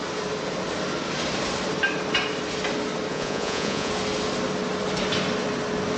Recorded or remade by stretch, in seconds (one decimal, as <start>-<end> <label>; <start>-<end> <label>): 0.0-3.1 recorded; 3.1-3.9 remade; 3.9-6.0 recorded